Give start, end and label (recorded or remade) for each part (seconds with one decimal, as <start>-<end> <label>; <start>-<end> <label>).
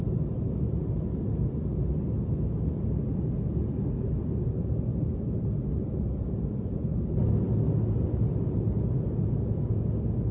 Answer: 0.0-10.3 recorded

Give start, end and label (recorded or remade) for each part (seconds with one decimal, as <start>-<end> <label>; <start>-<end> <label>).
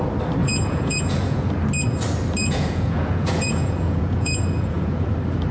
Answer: 0.0-0.4 recorded; 0.4-1.5 remade; 1.5-2.4 recorded; 2.4-5.1 remade; 5.1-5.5 recorded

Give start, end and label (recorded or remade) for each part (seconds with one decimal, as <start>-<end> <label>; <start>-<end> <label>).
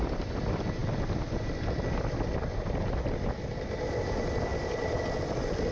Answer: 0.0-5.7 recorded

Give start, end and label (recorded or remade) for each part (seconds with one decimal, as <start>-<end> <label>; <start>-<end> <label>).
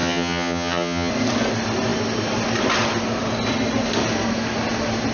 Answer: 0.0-1.1 remade; 1.1-5.1 recorded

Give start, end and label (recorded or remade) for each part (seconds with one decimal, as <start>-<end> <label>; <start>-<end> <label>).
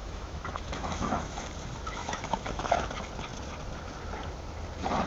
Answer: 0.0-1.4 remade; 1.4-2.0 recorded; 2.0-2.9 remade; 2.9-5.1 recorded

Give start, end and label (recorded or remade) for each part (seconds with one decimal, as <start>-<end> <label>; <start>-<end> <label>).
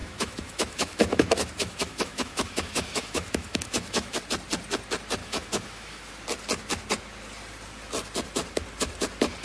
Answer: 0.0-4.2 remade; 4.2-5.2 recorded; 5.2-6.1 remade; 6.1-9.4 recorded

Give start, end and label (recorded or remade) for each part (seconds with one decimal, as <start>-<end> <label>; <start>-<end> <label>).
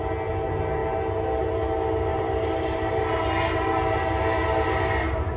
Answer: 0.0-2.1 recorded; 2.1-4.0 remade; 4.0-5.4 recorded